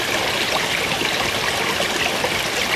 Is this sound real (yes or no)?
yes